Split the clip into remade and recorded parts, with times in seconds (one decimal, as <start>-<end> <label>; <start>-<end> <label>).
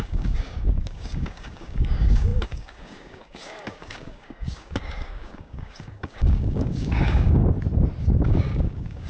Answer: 0.0-7.4 remade; 7.4-8.0 recorded; 8.0-9.1 remade